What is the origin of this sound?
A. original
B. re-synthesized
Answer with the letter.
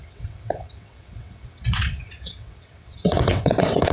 B